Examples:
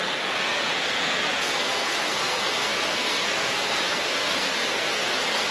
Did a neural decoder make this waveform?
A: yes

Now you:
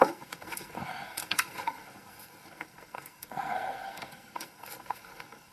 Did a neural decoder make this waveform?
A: yes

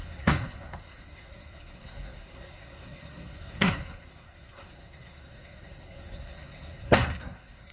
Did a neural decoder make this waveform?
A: yes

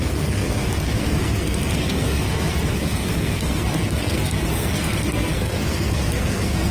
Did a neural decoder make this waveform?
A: yes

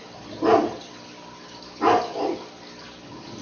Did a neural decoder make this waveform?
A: no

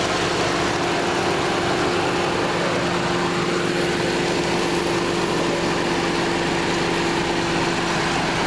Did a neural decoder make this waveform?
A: no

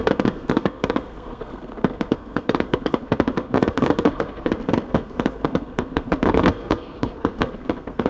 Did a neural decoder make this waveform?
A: yes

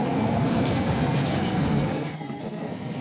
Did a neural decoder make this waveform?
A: yes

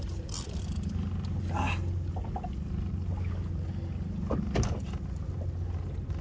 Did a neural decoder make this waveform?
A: no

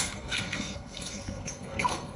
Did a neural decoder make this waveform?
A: yes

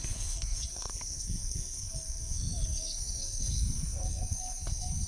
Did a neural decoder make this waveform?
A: yes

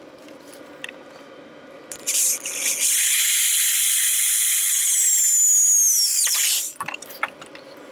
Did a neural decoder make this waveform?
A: no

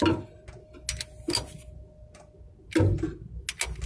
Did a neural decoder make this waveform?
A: no